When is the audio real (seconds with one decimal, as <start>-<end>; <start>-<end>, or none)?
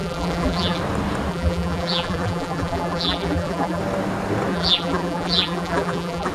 0.8-1.3; 3.8-4.5